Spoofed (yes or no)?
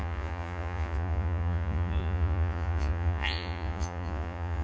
yes